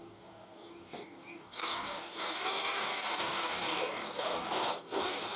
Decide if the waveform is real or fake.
fake